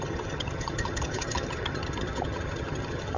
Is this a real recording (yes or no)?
no